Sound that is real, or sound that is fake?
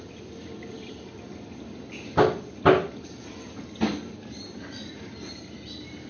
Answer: real